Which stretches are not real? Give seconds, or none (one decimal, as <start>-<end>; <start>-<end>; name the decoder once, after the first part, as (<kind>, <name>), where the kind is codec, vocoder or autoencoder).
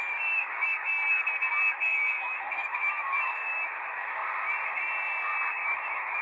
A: 0.0-0.9 (autoencoder, DAC-VAE); 1.8-4.2; 5.5-6.2